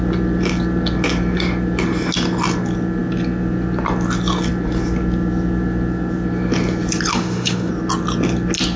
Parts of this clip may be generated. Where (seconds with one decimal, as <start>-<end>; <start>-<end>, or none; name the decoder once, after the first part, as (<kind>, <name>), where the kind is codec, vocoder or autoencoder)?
7.1-7.7 (autoencoder, DAC-VAE)